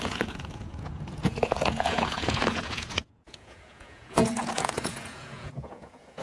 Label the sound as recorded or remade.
remade